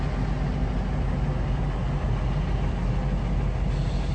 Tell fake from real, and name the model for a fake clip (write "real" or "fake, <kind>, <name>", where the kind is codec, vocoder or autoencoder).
real